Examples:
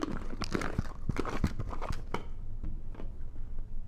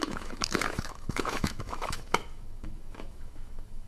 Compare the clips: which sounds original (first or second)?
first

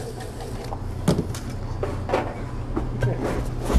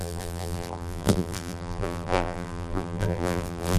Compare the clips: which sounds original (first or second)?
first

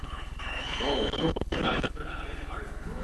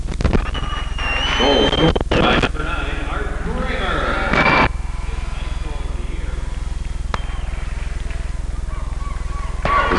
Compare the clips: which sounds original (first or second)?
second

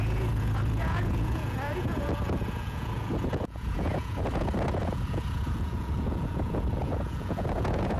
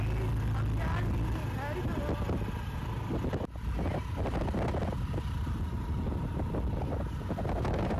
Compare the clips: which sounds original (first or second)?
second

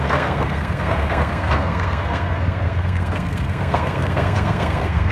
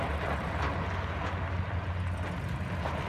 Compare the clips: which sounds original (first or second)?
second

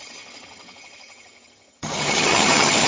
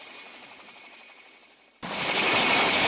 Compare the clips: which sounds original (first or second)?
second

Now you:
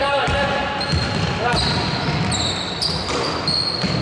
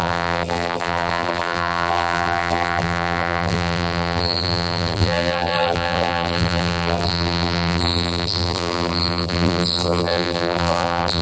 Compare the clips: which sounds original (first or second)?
first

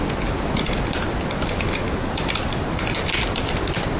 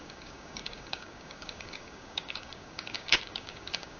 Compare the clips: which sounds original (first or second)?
first